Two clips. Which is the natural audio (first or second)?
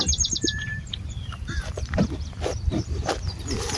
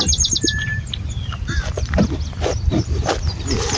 second